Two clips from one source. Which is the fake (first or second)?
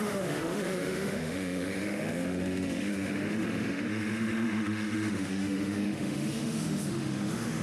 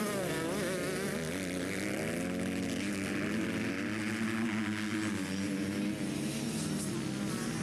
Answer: first